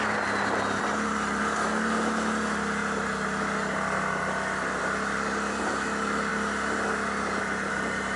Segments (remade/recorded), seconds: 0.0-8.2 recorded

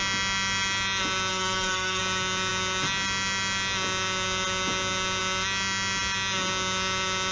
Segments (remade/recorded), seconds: 0.0-1.3 recorded; 1.3-2.0 remade; 2.0-7.3 recorded

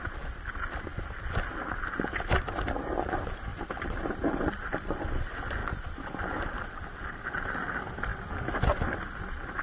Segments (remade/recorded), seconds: 0.0-3.5 recorded; 3.5-5.1 remade; 5.1-9.6 recorded

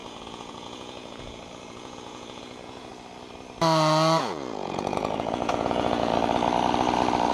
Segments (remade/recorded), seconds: 0.0-2.9 remade; 2.9-4.2 recorded; 4.2-6.1 remade; 6.1-7.3 recorded

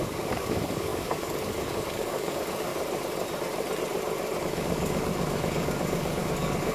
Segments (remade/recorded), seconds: 0.0-2.7 remade; 2.7-4.4 recorded; 4.4-6.7 remade

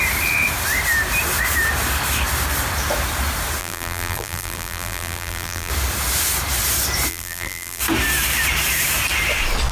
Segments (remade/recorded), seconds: 0.0-3.6 recorded; 3.6-5.7 remade; 5.7-7.1 recorded; 7.1-7.8 remade; 7.8-9.7 recorded